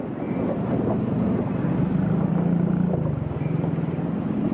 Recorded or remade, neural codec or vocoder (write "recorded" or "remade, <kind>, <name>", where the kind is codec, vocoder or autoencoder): recorded